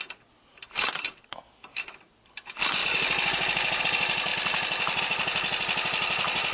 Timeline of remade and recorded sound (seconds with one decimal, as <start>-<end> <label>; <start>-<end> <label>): 0.0-6.5 recorded